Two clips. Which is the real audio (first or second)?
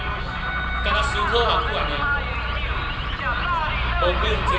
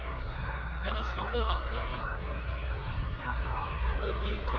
first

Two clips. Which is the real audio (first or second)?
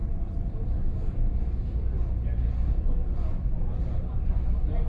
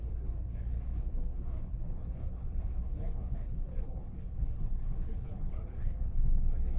first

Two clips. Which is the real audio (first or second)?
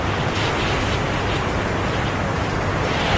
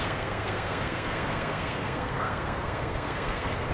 first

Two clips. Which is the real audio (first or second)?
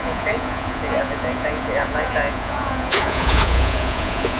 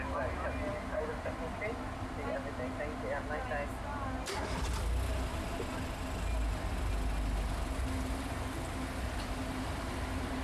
second